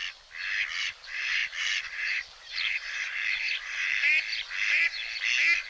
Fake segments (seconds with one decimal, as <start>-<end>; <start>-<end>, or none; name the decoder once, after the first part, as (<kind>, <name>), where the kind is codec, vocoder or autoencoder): 0.8-4.1 (vocoder, BigVGAN v2)

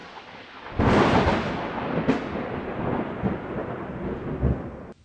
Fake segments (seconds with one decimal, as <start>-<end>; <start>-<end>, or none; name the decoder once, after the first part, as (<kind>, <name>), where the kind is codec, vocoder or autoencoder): none

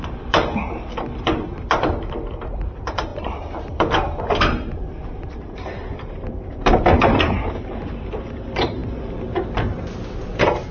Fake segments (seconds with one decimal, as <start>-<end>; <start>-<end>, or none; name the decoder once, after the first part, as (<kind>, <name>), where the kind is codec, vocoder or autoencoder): 0.0-10.7 (vocoder, BigVGAN v2)